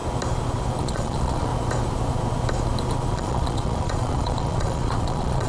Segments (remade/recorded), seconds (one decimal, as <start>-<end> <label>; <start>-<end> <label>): 0.0-0.8 recorded; 0.8-1.5 remade; 1.5-3.1 recorded; 3.1-5.5 remade